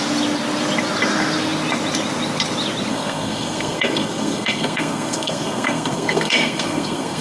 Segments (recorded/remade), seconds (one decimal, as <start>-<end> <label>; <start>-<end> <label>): 0.0-2.9 recorded; 2.9-7.2 remade